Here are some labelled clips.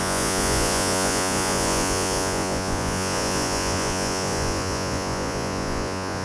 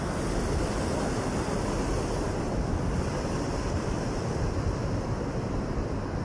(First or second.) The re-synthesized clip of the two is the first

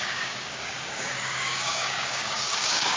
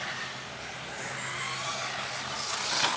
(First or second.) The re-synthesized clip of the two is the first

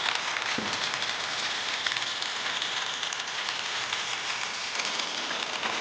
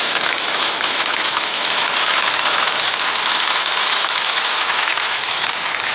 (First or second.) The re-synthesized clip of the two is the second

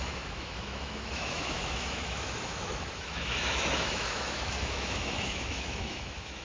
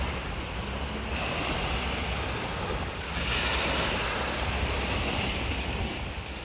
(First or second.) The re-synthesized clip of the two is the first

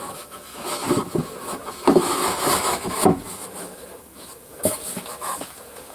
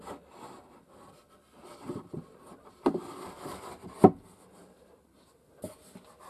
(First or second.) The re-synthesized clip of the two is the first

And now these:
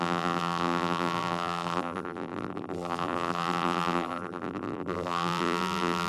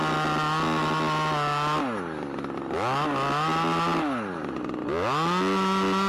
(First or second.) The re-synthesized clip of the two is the first